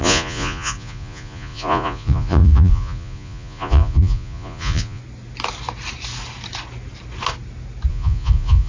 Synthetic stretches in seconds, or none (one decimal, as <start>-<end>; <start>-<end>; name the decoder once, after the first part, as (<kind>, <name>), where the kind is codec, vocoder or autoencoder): 0.0-5.0 (vocoder, Vocos); 7.9-8.7